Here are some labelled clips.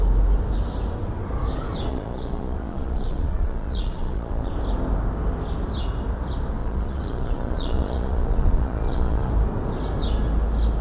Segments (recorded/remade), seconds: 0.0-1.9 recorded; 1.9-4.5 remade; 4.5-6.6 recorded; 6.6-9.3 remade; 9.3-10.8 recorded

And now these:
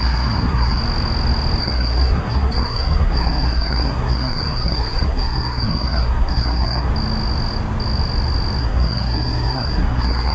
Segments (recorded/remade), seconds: 0.0-0.8 remade; 0.8-1.6 recorded; 1.6-6.9 remade; 6.9-8.6 recorded; 8.6-10.3 remade